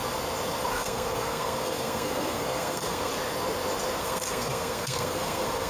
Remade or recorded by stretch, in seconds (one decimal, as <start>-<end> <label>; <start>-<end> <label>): 0.0-0.7 recorded; 0.7-3.1 remade; 3.1-4.0 recorded; 4.0-5.7 remade